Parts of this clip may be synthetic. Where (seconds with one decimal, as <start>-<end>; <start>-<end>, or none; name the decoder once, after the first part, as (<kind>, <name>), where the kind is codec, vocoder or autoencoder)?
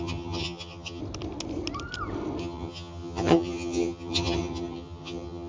0.0-1.0 (vocoder, HiFi-GAN); 2.4-5.5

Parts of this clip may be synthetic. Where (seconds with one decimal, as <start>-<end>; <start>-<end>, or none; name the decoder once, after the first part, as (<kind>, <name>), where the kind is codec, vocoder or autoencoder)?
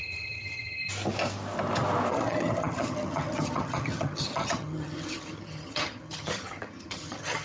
0.0-0.8 (vocoder, HiFi-GAN); 2.1-7.4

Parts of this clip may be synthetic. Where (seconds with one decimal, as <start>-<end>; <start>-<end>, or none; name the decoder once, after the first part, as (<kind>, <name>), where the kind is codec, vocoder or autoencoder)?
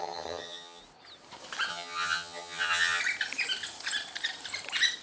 0.0-0.8 (vocoder, HiFi-GAN); 1.7-3.0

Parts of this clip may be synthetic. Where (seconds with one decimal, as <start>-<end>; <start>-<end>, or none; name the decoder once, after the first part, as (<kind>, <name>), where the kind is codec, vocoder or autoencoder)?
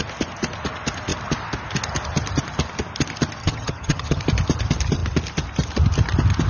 3.4-4.2 (vocoder, HiFi-GAN)